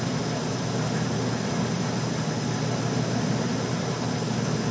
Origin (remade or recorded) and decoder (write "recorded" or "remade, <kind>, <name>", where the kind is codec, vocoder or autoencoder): recorded